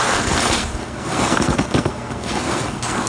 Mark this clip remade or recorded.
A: remade